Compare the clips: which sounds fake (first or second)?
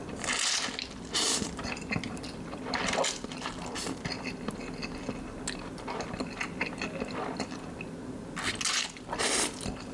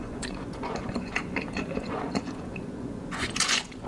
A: second